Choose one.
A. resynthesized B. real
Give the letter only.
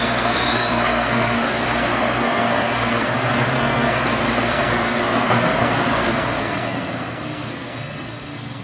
A